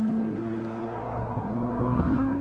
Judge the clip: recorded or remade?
remade